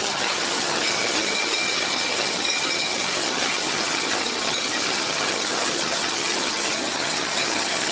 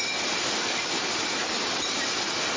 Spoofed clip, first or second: first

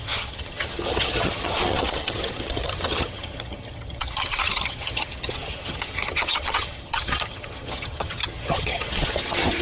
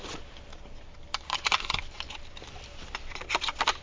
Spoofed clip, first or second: first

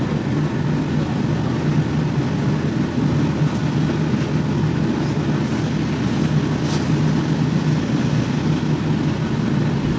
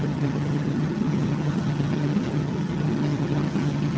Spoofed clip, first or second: second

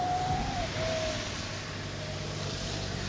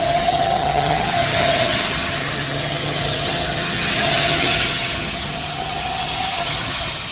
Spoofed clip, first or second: second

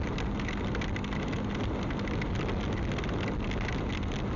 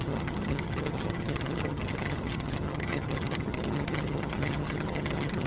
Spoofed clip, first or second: second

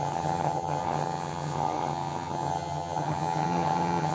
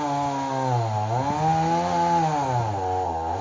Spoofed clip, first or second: first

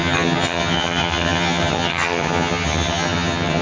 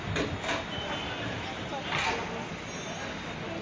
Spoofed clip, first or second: first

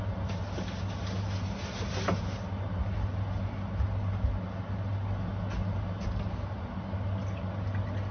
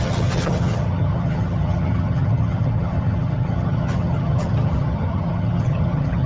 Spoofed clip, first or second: second